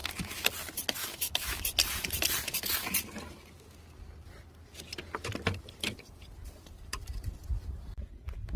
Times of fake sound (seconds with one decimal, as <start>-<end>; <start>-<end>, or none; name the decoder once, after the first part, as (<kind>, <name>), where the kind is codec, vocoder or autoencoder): 1.0-1.6 (autoencoder, DAC-VAE)